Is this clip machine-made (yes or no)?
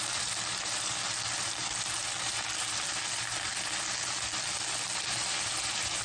no